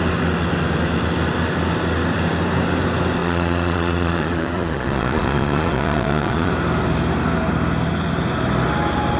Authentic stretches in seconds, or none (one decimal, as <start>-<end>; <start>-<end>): 0.0-3.2; 6.5-9.2